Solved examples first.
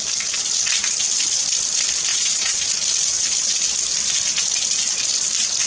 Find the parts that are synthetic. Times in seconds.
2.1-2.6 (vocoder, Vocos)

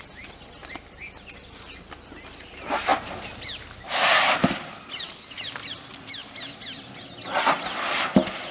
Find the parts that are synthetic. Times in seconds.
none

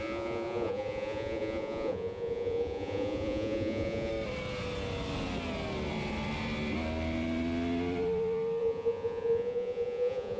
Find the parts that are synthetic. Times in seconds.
0.0-4.1 (vocoder, Vocos); 8.6-10.4

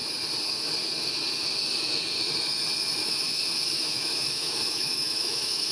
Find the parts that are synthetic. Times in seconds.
3.0-5.7 (autoencoder, DAC-VAE)

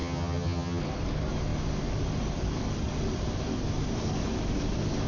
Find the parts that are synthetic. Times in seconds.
0.0-0.8 (vocoder, HiFi-GAN)

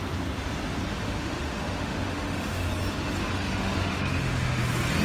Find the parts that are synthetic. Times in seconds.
0.9-2.7 (autoencoder, DAC-VAE); 3.5-4.6

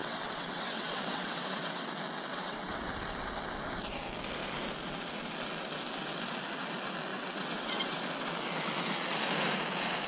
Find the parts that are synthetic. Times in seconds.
0.0-1.8 (vocoder, WaveNeXt); 2.3-2.8; 7.1-8.0

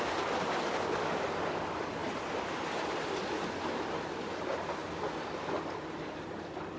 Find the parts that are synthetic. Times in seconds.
2.0-3.3 (vocoder, BigVGAN v2); 4.8-6.8